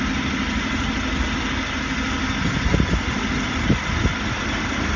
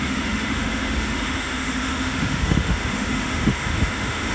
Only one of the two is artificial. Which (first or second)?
second